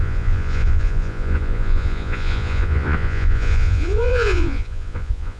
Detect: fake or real fake